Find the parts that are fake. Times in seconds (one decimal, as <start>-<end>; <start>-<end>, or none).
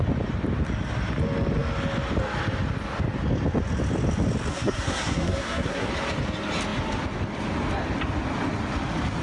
4.5-5.9